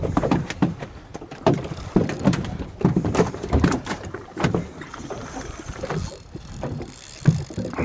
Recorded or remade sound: remade